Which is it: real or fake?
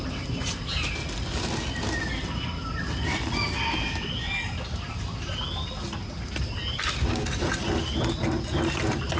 real